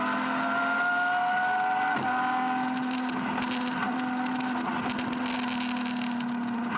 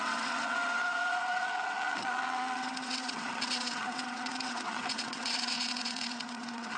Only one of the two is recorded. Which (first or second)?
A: first